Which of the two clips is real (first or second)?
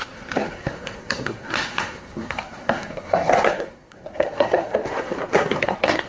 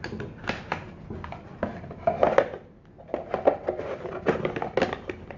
second